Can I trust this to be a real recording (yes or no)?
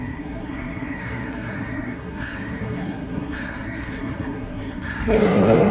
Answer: no